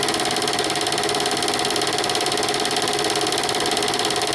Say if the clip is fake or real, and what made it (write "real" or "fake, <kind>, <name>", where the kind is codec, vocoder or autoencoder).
real